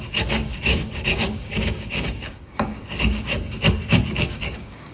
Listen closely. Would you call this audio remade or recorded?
remade